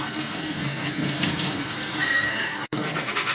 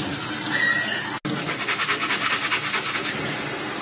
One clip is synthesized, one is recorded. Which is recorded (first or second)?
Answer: second